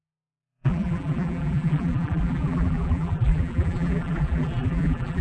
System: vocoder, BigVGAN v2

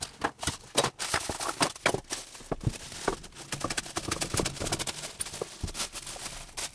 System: none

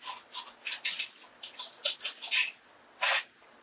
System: none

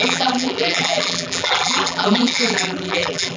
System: vocoder, BigVGAN v2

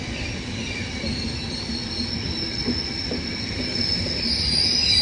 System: none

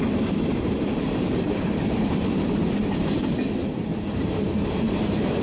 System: vocoder, BigVGAN v2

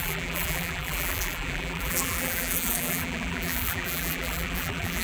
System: vocoder, BigVGAN v2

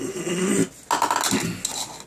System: none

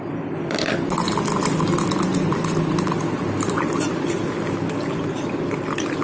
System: none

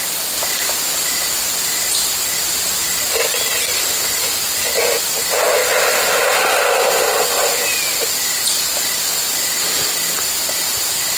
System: none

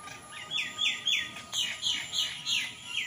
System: vocoder, BigVGAN v2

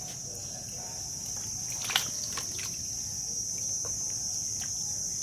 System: none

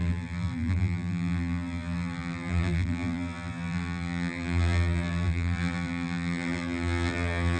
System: vocoder, BigVGAN v2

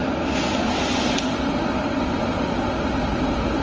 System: none